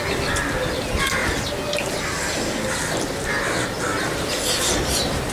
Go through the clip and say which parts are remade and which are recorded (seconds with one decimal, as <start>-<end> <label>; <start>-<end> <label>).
0.0-5.3 recorded